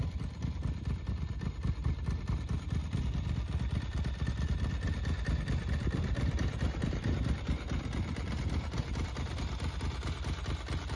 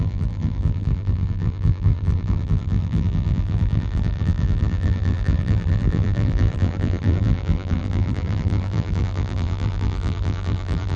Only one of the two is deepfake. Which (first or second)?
second